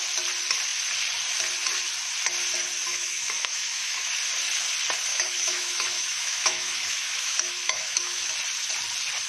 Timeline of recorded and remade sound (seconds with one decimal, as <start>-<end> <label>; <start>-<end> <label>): 0.0-2.9 recorded; 2.9-4.1 remade; 4.1-5.1 recorded; 5.1-8.3 remade; 8.3-9.3 recorded